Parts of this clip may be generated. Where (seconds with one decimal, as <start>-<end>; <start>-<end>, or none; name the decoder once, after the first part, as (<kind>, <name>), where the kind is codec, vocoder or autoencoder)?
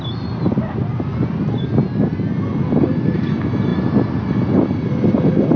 none